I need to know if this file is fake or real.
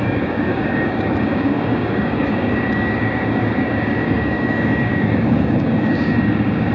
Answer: fake